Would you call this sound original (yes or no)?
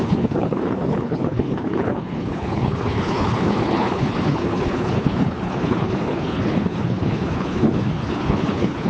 no